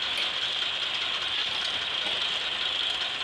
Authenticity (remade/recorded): recorded